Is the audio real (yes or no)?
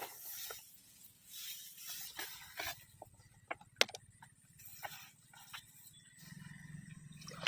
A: yes